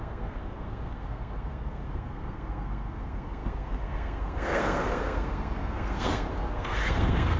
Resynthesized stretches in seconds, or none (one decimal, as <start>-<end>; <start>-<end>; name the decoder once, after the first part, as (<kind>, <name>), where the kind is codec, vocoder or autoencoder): 0.0-7.4 (codec, SNAC)